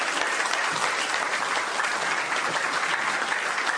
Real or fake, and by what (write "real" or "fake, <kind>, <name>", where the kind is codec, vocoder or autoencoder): real